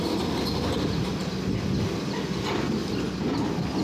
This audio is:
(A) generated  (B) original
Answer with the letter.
B